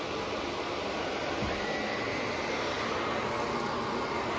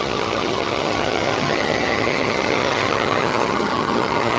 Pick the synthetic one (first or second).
second